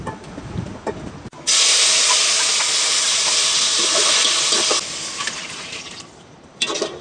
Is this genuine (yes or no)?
yes